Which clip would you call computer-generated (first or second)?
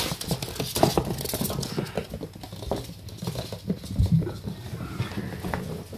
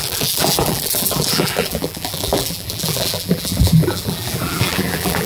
second